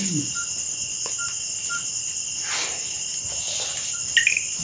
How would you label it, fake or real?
real